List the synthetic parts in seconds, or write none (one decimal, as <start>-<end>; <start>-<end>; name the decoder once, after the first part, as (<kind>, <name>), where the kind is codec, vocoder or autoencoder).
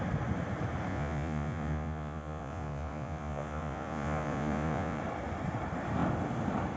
0.9-5.0 (vocoder, Vocos)